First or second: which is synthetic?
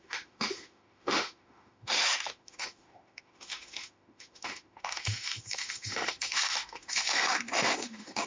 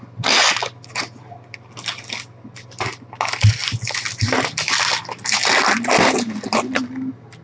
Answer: first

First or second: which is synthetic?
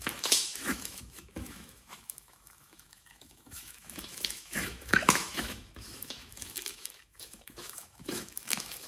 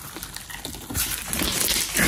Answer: first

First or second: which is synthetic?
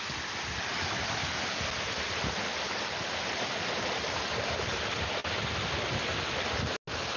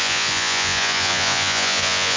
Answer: second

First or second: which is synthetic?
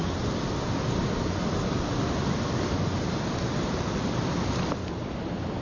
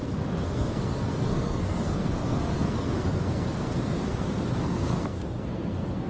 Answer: second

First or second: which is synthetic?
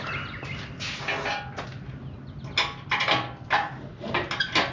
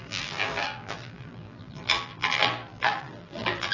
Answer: second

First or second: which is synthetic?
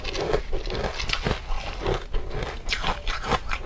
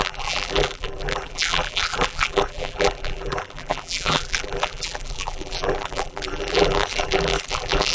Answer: second